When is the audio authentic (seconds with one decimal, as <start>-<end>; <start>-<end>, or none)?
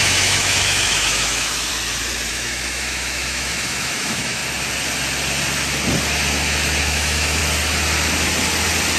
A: 1.7-2.3; 4.4-6.8; 7.4-9.0